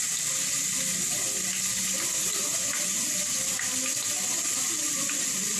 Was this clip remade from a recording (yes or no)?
no